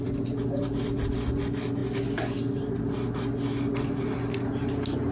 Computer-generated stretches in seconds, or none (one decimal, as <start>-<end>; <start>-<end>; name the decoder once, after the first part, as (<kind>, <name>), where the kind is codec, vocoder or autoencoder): none